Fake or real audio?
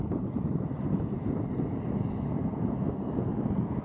real